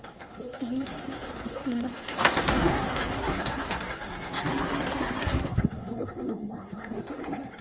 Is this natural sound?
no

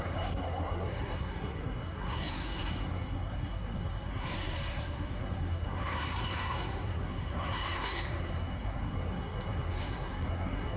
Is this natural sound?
no